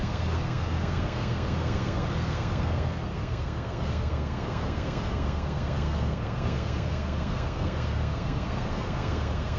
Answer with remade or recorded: remade